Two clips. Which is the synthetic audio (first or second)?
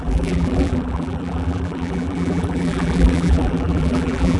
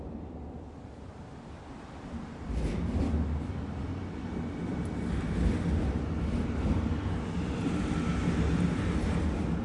first